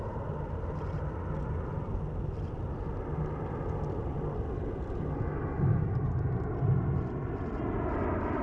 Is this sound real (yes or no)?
yes